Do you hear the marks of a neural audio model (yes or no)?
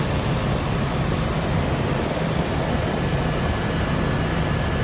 no